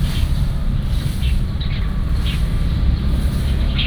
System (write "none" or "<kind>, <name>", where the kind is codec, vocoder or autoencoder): none